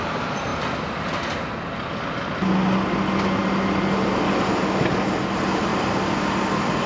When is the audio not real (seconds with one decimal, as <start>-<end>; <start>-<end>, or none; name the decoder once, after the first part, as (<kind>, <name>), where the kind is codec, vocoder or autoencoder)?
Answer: none